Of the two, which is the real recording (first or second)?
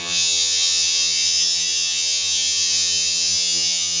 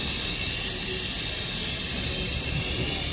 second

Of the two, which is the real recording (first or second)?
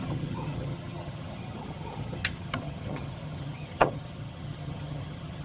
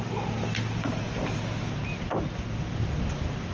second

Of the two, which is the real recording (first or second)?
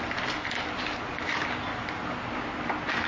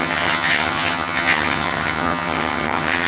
first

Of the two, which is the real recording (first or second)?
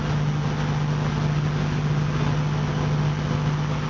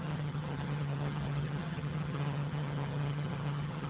first